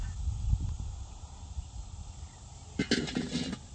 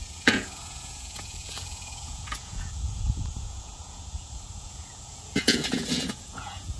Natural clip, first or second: first